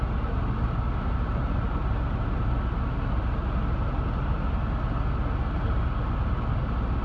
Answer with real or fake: real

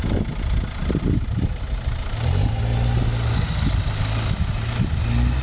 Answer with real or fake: real